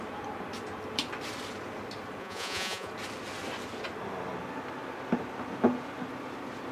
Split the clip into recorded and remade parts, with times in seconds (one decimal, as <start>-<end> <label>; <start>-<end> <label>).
0.0-2.2 recorded; 2.2-2.9 remade; 2.9-6.7 recorded